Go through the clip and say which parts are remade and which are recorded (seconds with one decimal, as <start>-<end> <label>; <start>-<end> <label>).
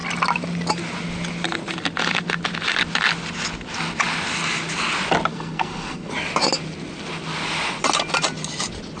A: 0.0-5.3 recorded; 5.3-6.1 remade; 6.1-9.0 recorded